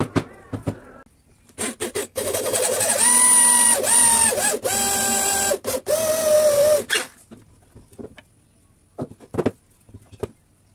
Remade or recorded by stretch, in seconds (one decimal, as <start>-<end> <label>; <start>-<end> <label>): 0.0-2.0 recorded; 2.0-2.9 remade; 2.9-10.7 recorded